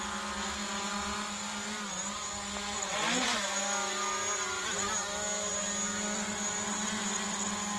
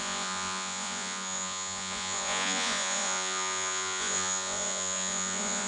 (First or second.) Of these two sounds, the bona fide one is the first